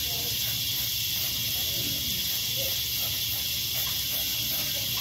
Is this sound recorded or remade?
recorded